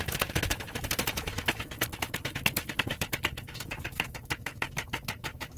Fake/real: fake